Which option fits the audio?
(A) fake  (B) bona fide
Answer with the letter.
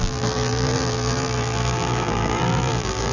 A